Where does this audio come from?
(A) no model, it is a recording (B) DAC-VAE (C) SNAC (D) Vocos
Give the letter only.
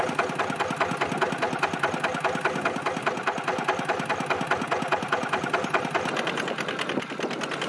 A